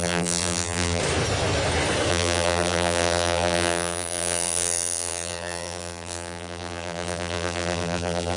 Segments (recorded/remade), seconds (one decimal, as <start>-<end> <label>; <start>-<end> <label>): 0.0-1.0 remade; 1.0-2.1 recorded; 2.1-8.4 remade